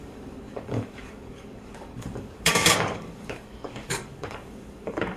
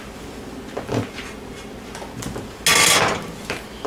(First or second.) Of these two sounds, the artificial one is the first